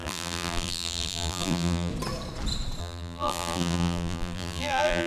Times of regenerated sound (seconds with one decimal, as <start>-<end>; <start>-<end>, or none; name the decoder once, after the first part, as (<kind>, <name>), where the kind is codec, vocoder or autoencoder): 0.0-1.9 (vocoder, BigVGAN v2); 2.8-5.1